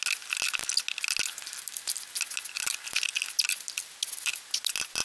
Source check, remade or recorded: recorded